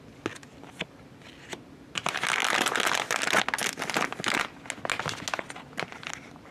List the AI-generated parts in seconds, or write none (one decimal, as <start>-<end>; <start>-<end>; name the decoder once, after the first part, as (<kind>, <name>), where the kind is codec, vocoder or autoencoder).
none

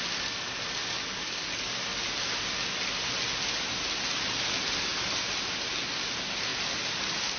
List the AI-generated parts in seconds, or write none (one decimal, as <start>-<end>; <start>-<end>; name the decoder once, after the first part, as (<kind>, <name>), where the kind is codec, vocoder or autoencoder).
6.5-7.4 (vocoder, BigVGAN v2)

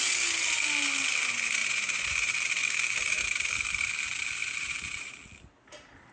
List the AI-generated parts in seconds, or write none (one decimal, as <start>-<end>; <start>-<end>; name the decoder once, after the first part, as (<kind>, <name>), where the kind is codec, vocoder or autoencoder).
1.6-3.9 (vocoder, BigVGAN v2); 4.4-5.1

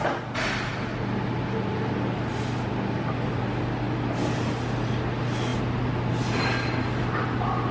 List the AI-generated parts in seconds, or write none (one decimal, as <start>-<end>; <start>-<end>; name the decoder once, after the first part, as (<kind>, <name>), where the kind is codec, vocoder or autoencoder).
none

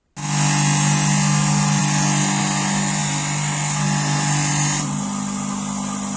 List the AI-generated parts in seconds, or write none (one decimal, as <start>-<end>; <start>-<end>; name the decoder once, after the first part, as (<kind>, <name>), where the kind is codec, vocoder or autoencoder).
none